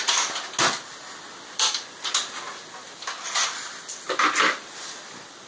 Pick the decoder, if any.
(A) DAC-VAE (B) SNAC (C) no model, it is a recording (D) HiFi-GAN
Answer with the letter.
C